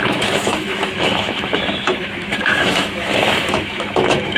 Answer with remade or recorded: remade